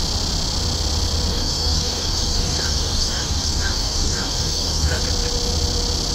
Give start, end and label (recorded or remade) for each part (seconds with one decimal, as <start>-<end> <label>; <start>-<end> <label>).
0.0-1.3 recorded; 1.3-5.0 remade; 5.0-6.1 recorded

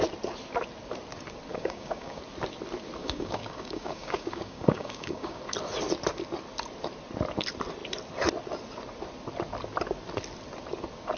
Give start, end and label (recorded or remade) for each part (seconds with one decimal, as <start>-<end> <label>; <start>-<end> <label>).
0.0-1.5 recorded; 1.5-2.2 remade; 2.2-3.0 recorded; 3.0-5.4 remade; 5.4-11.2 recorded

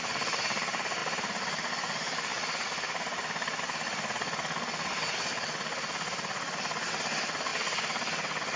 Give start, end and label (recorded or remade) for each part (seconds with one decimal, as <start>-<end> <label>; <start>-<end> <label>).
0.0-8.6 recorded